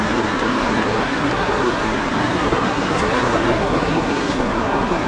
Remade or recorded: remade